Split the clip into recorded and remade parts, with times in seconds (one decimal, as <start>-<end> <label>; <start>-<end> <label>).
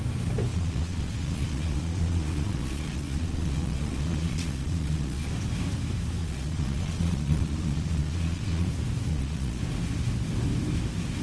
0.0-0.5 recorded; 0.5-5.3 remade; 5.3-6.2 recorded; 6.2-8.7 remade; 8.7-9.1 recorded; 9.1-9.6 remade; 9.6-11.2 recorded